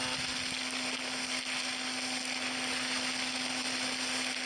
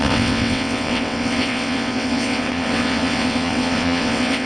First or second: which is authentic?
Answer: first